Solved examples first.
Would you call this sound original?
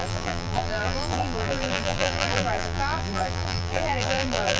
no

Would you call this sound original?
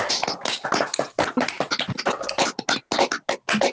yes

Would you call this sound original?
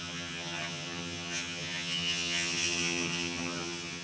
no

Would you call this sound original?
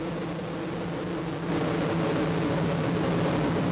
yes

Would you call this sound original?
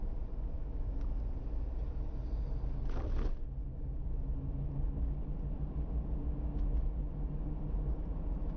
yes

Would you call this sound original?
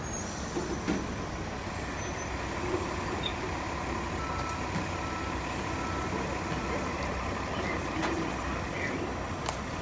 yes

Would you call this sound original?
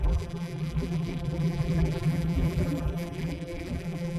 no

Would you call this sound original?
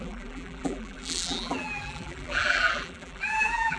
no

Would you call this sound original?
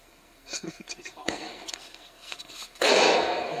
no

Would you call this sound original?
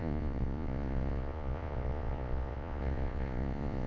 no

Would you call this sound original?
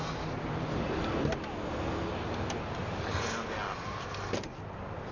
yes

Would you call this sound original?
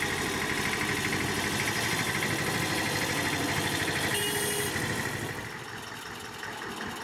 yes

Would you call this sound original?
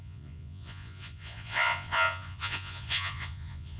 no